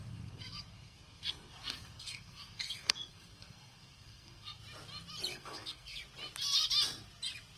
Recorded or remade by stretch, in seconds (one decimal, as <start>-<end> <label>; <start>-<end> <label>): 0.0-4.6 remade; 4.6-5.3 recorded; 5.3-6.0 remade; 6.0-7.6 recorded